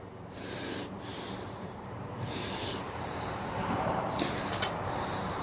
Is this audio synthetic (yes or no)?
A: yes